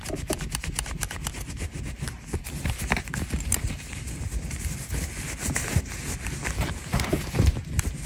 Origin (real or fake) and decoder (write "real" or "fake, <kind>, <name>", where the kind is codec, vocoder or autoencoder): real